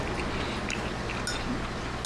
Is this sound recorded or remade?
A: recorded